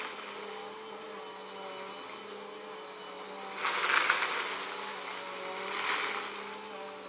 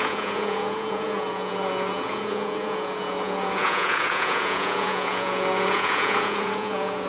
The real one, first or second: first